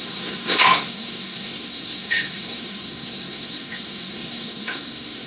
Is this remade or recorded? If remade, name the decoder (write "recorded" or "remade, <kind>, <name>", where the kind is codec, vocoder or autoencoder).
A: remade, codec, SNAC